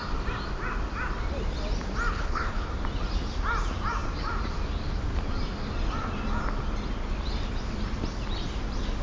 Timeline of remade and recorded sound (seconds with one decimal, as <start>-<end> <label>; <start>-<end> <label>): 0.0-2.1 recorded; 2.1-2.7 remade; 2.7-9.0 recorded